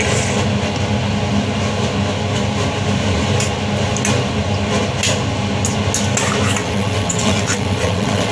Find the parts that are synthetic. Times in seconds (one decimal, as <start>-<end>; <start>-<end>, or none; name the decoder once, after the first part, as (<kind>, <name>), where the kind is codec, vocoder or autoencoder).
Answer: 6.6-8.3 (vocoder, WaveNeXt)